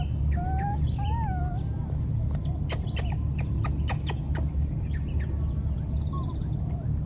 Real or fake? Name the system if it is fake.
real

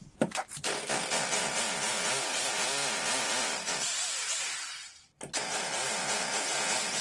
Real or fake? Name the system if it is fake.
real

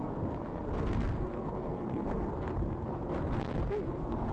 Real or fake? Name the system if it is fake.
fake, codec, SNAC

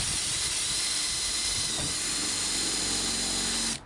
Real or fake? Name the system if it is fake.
real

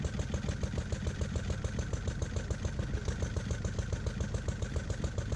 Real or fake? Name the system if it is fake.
real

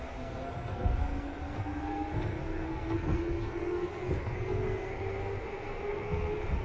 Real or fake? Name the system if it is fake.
fake, codec, SNAC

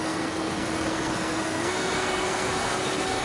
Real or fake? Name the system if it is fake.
fake, codec, SNAC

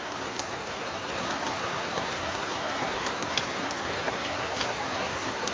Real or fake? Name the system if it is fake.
fake, codec, SNAC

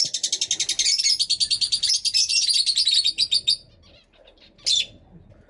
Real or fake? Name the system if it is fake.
real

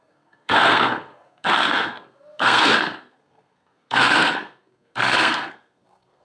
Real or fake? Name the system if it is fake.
fake, codec, SNAC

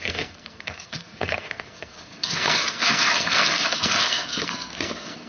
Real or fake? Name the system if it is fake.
fake, codec, SNAC